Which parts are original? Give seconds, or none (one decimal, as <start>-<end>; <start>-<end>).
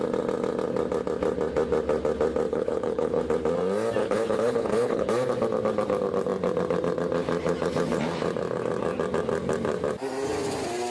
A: 0.0-2.5; 3.2-4.0; 5.1-10.9